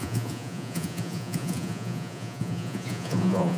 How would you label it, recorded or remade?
remade